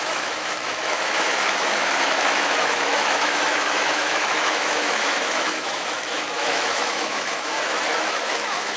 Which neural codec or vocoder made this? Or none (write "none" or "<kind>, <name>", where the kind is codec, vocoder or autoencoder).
autoencoder, DAC-VAE